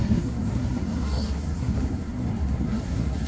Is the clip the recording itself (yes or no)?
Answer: no